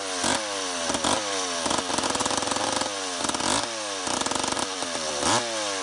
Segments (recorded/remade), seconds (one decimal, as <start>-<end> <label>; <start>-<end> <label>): 0.0-5.8 recorded